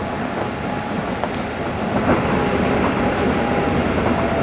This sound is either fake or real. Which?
real